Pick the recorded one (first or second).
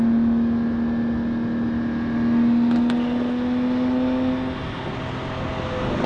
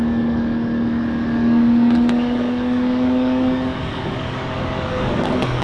first